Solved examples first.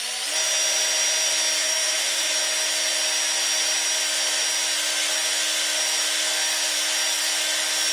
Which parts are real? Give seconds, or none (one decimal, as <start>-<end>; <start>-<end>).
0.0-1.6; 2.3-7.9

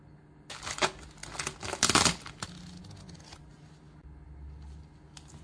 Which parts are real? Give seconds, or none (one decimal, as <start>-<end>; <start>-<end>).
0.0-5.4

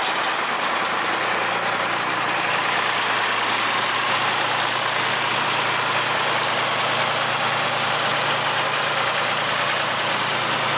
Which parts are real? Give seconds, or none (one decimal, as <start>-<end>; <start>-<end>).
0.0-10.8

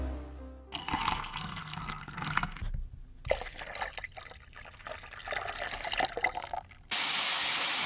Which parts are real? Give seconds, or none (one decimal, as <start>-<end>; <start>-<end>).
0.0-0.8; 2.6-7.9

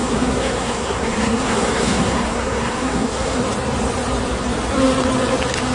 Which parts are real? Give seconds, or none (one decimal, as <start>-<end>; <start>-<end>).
3.4-5.7